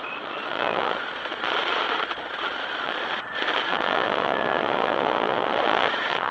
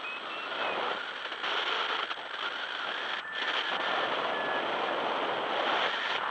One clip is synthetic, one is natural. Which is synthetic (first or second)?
first